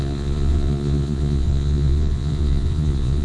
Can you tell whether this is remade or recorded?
remade